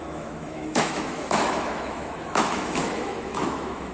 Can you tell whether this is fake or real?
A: fake